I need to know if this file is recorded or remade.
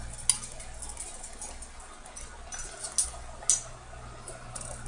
recorded